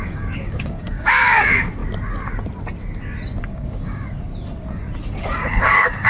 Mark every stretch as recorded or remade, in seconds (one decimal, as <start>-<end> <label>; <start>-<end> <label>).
0.0-1.8 remade; 1.8-3.4 recorded; 3.4-4.3 remade; 4.3-5.2 recorded; 5.2-6.1 remade